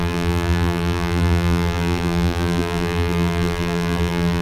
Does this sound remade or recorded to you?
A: remade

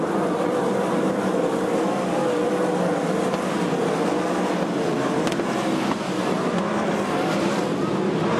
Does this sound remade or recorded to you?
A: recorded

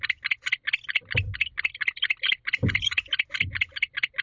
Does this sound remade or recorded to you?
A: recorded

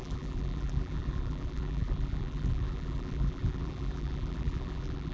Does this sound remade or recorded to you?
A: remade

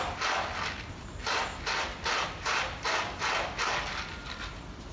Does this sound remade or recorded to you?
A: recorded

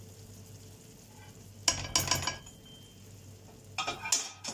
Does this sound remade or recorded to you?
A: recorded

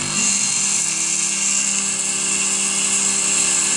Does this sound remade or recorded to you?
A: recorded